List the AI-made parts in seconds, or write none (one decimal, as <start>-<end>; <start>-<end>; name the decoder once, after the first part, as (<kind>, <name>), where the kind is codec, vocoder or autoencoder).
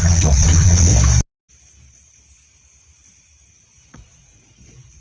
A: 0.0-0.9 (vocoder, Vocos); 3.9-5.0